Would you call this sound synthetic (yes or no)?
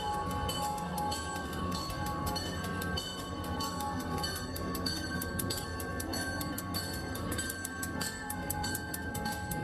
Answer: yes